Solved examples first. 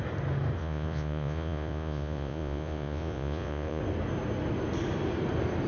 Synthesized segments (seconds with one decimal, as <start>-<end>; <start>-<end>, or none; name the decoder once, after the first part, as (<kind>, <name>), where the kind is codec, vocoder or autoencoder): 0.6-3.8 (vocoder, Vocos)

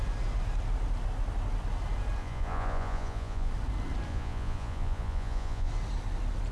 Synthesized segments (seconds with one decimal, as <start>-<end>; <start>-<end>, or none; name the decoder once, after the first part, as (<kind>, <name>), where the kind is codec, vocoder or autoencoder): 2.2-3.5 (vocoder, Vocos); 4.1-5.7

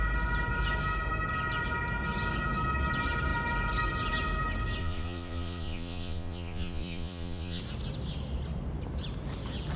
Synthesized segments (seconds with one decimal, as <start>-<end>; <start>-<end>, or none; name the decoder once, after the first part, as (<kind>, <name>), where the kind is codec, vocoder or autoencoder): 4.8-7.6 (vocoder, Vocos)

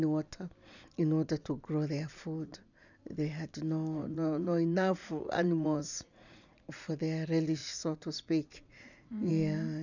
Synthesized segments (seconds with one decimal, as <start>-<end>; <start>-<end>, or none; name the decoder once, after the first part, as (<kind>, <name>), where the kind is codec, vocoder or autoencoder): 4.0-6.9 (vocoder, Vocos); 7.6-9.3